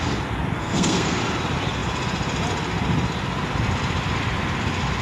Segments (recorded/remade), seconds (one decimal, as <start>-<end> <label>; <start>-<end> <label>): 0.0-0.6 recorded; 0.6-1.2 remade; 1.2-5.0 recorded